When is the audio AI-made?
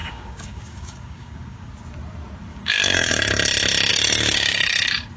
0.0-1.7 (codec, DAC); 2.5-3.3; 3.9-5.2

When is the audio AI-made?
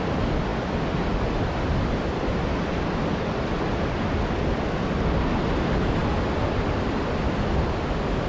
none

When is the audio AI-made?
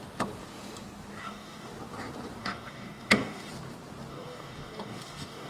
1.2-1.7 (codec, DAC); 2.4-3.5; 4.1-5.5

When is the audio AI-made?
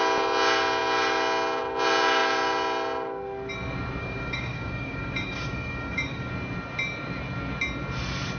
4.0-6.3 (codec, DAC)